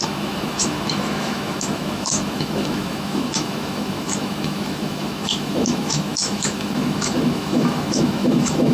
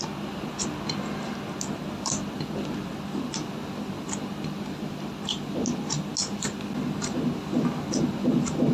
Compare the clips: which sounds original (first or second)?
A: second